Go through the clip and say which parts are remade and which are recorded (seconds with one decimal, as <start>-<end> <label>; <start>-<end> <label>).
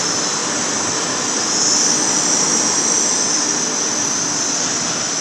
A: 0.0-5.2 recorded